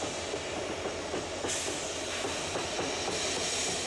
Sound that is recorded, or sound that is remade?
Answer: recorded